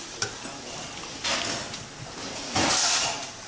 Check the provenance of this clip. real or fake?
real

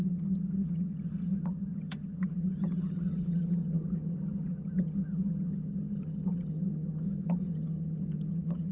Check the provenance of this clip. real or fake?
fake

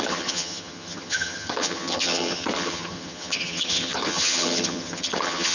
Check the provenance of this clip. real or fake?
fake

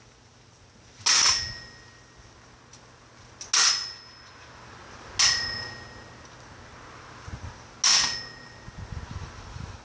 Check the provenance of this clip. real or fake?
real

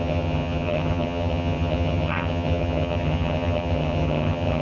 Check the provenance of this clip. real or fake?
fake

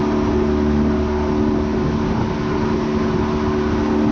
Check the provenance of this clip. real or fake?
real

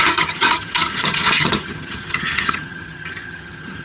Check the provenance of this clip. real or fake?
fake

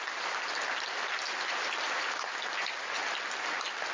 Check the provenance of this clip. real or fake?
real